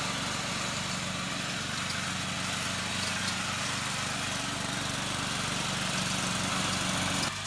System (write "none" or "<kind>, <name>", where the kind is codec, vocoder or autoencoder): none